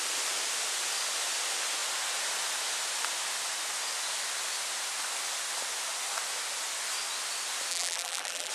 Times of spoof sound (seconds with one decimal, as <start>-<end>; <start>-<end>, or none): 7.7-8.5